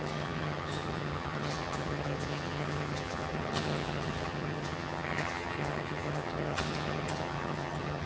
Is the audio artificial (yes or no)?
yes